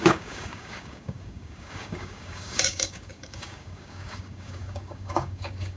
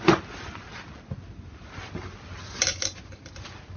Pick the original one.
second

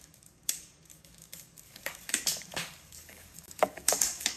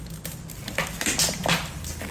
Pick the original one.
second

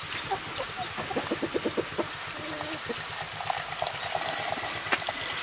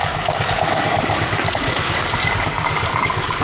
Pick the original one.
first